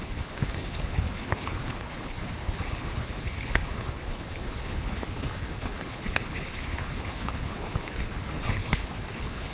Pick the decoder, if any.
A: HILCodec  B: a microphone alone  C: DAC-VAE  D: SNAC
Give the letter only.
A